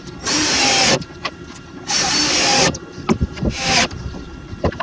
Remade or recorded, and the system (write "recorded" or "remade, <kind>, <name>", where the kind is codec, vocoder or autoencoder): remade, vocoder, BigVGAN v2